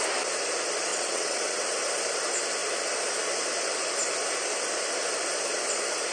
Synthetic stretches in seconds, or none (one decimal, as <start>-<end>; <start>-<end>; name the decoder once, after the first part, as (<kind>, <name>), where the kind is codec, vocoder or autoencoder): 0.9-1.6 (vocoder, WaveNeXt)